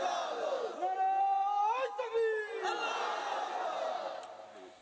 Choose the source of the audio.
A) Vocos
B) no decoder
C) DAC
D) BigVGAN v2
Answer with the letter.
B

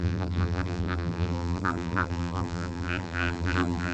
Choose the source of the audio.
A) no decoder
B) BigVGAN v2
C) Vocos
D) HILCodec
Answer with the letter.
B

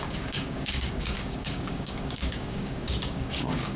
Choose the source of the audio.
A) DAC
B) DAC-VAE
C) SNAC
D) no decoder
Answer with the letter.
A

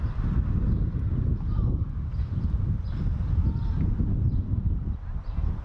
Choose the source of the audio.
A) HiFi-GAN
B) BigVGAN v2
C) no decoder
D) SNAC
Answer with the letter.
C